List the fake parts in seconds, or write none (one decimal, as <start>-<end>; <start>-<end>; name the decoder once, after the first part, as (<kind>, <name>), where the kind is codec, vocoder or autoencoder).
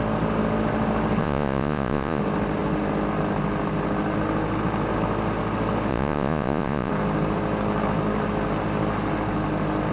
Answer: 1.2-2.2 (vocoder, Vocos); 5.9-6.9